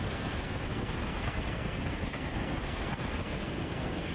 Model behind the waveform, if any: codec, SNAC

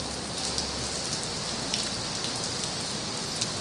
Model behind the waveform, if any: none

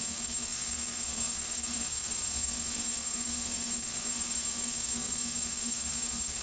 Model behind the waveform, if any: codec, SNAC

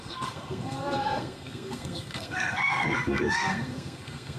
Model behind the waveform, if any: codec, SNAC